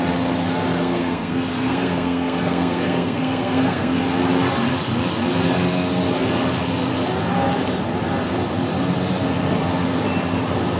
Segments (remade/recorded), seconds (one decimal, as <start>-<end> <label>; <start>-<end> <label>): 0.0-0.8 recorded; 0.8-4.0 remade; 4.0-10.8 recorded